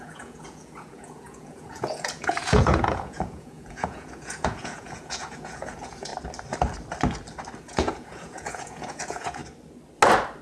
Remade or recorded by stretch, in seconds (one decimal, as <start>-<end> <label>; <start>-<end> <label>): 0.0-6.1 remade; 6.1-7.6 recorded; 7.6-9.4 remade; 9.4-10.4 recorded

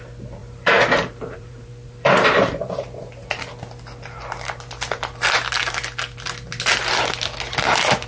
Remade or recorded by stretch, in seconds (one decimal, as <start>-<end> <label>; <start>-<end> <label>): 0.0-0.4 recorded; 0.4-3.3 remade; 3.3-8.1 recorded

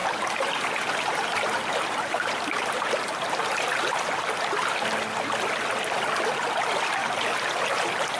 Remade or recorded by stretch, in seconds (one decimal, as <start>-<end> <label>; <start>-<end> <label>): 0.0-3.4 remade; 3.4-7.0 recorded; 7.0-7.6 remade; 7.6-8.2 recorded

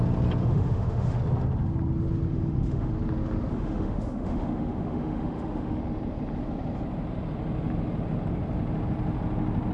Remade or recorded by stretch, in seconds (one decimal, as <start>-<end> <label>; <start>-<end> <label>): 0.0-0.4 recorded; 0.4-1.2 remade; 1.2-2.3 recorded; 2.3-2.9 remade; 2.9-3.5 recorded; 3.5-5.8 remade; 5.8-9.7 recorded

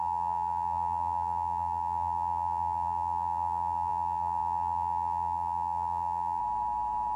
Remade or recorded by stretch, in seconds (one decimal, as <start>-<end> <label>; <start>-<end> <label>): 0.0-6.4 remade; 6.4-7.2 recorded

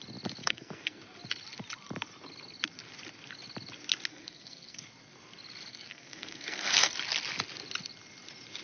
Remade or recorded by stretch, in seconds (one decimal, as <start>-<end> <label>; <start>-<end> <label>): 0.0-0.4 recorded; 0.4-1.0 remade; 1.0-4.1 recorded; 4.1-4.8 remade; 4.8-5.7 recorded; 5.7-6.9 remade; 6.9-8.6 recorded